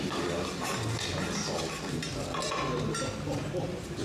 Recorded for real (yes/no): yes